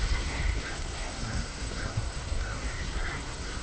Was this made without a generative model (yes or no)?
no